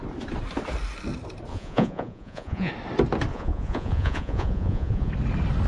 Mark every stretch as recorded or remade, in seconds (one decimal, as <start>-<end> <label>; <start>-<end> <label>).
0.0-1.5 recorded; 1.5-2.7 remade; 2.7-3.3 recorded; 3.3-5.1 remade; 5.1-5.7 recorded